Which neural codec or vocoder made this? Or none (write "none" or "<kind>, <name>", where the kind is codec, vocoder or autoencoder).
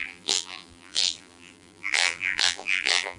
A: vocoder, BigVGAN v2